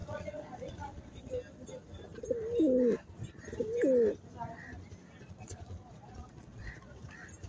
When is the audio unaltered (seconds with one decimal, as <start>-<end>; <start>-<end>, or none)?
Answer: 1.3-5.2; 7.0-7.5